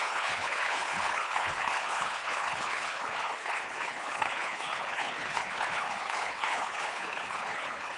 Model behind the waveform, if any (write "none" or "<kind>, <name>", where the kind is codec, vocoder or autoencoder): codec, HILCodec